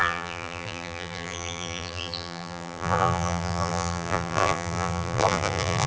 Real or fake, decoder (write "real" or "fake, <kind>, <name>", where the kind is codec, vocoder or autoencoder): fake, vocoder, BigVGAN v2